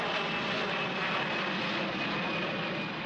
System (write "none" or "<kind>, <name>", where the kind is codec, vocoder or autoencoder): none